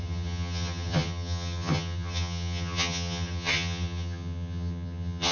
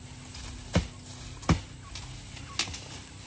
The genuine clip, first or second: second